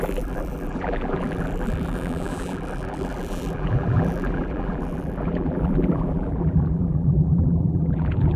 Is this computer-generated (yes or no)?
yes